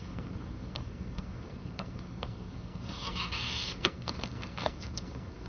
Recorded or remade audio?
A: remade